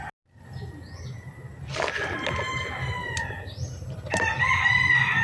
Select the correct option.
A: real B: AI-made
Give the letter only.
A